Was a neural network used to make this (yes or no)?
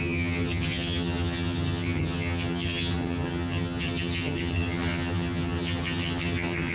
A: yes